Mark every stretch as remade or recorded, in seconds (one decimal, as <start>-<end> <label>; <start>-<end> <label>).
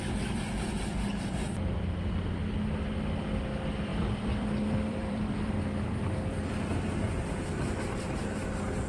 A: 0.0-3.9 recorded; 3.9-7.8 remade; 7.8-8.9 recorded